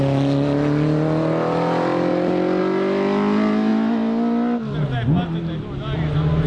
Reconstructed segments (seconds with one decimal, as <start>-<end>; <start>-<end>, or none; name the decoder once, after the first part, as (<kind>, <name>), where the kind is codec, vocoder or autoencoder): none